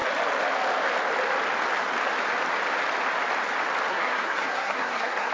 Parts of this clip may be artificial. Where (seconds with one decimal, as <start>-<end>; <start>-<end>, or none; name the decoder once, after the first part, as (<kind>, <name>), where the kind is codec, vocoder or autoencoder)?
3.9-5.3 (codec, SNAC)